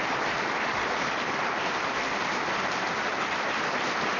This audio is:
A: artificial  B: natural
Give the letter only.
B